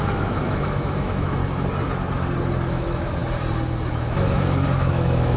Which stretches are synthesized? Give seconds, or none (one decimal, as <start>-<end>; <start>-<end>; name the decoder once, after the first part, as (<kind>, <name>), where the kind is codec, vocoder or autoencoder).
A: 0.0-1.4 (autoencoder, DAC-VAE); 2.7-3.2; 3.9-5.4